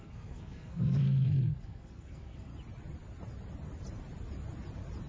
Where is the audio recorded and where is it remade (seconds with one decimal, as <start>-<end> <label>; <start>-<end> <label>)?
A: 0.0-2.5 remade; 2.5-5.1 recorded